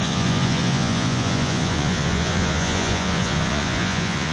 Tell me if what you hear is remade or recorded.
remade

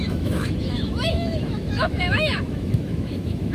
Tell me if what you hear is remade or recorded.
remade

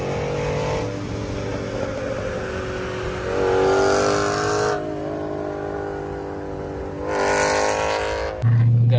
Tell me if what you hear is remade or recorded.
recorded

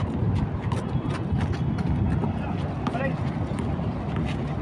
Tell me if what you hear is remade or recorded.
recorded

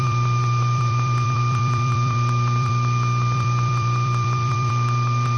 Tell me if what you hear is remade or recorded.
remade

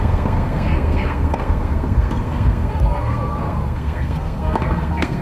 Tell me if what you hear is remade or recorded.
remade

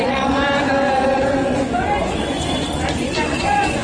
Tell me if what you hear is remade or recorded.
remade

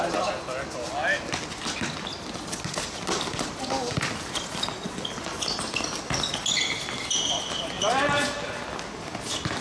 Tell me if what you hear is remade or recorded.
recorded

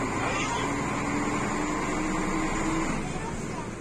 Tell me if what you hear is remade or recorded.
recorded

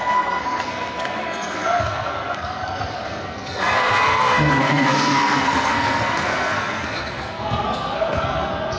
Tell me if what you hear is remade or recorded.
remade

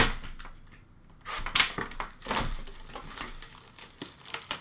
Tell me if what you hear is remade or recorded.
recorded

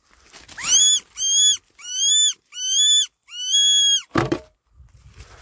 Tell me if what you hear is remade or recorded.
recorded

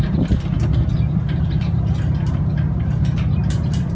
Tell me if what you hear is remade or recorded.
recorded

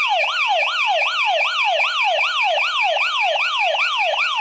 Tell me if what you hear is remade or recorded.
recorded